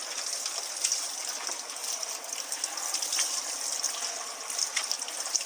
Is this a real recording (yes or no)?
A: yes